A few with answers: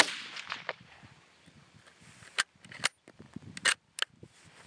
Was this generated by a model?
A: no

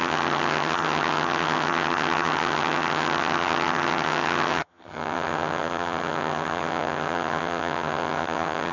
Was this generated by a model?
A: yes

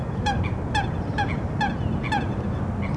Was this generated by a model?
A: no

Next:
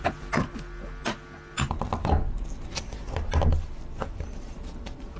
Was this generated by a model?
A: no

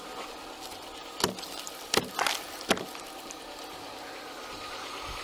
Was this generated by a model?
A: no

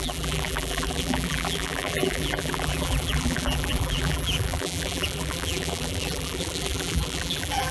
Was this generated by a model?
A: yes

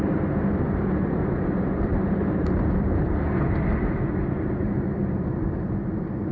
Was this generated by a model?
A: no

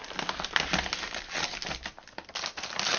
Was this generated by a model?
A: no